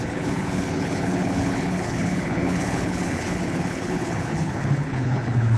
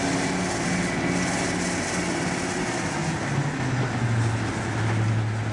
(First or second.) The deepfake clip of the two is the first